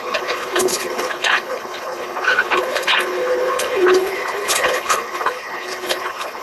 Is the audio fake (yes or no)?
yes